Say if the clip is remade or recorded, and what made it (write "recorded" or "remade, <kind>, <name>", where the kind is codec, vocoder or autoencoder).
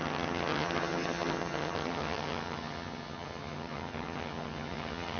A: remade, vocoder, HiFi-GAN